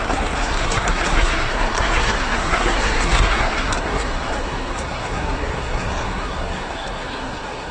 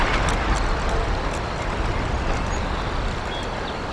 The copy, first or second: first